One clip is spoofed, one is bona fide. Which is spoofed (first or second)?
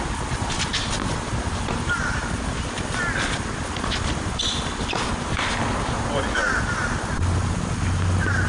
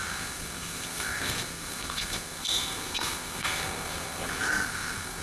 second